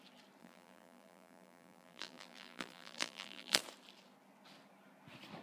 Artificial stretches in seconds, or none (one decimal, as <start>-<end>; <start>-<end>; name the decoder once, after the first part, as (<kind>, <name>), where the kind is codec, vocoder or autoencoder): 0.4-3.6 (vocoder, BigVGAN v2)